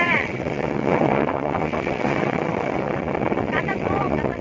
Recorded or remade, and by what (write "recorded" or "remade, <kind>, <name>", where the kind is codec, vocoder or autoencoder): remade, vocoder, WaveNeXt